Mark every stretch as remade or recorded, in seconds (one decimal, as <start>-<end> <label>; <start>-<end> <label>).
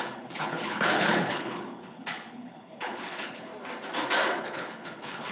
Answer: 0.0-3.5 remade; 3.5-4.4 recorded; 4.4-5.3 remade